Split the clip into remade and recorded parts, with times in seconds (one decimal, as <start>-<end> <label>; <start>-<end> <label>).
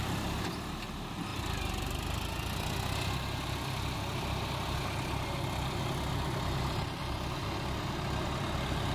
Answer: 0.0-1.3 recorded; 1.3-1.9 remade; 1.9-8.9 recorded